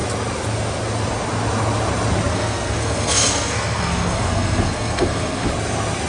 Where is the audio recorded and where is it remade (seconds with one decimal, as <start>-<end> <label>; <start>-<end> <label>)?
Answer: 0.0-2.3 recorded; 2.3-5.5 remade; 5.5-6.1 recorded